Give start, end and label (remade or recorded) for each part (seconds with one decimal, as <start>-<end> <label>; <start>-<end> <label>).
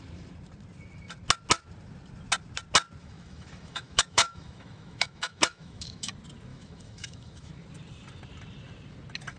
0.0-3.0 recorded; 3.0-6.1 remade; 6.1-6.5 recorded; 6.5-7.5 remade; 7.5-9.4 recorded